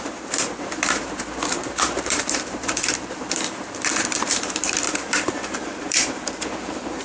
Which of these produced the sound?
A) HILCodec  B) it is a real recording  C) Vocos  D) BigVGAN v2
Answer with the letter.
D